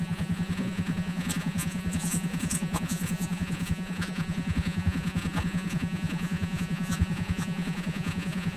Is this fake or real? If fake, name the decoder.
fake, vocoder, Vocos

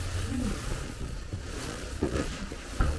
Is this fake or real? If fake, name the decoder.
fake, vocoder, Vocos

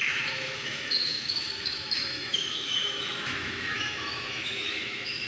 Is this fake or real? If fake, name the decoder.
fake, autoencoder, DAC-VAE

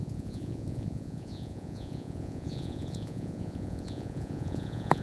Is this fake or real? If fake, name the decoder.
fake, vocoder, Vocos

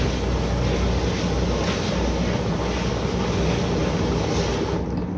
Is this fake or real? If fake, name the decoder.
real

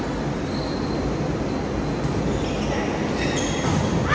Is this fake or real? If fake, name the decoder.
real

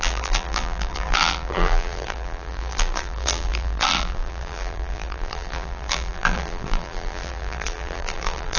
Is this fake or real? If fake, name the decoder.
fake, vocoder, BigVGAN v2